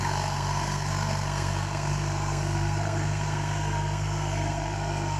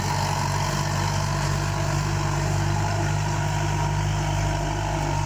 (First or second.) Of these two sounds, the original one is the second